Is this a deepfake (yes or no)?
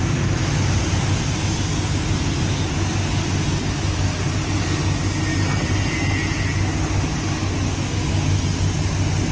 no